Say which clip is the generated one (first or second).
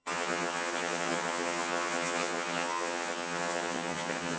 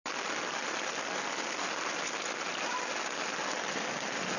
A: first